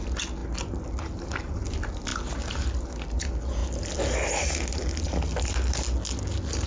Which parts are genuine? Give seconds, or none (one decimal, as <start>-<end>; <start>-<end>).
0.0-6.7